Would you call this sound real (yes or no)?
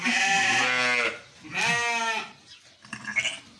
yes